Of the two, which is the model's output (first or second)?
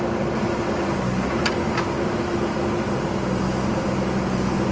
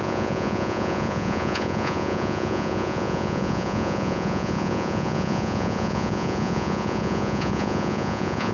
second